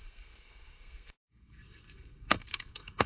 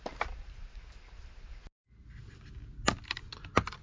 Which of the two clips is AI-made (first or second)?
first